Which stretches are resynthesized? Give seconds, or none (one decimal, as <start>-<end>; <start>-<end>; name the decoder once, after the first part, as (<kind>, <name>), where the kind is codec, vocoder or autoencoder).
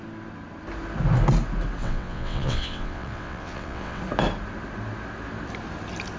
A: 1.8-4.0 (vocoder, WaveNeXt)